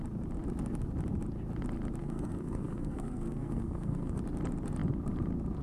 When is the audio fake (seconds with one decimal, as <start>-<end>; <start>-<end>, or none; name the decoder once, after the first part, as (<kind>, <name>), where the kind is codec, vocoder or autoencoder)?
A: 2.0-4.2 (codec, SNAC)